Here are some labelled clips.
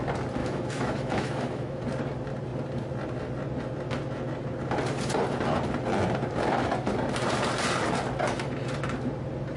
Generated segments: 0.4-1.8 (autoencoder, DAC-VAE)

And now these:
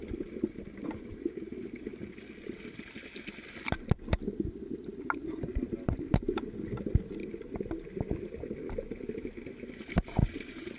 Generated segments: none